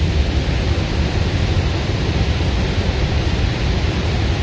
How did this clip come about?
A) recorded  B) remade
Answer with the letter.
A